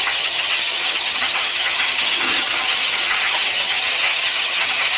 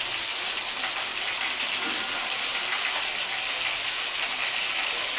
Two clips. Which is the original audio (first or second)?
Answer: second